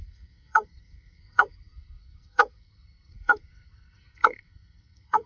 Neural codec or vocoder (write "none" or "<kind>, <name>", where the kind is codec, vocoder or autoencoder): codec, SNAC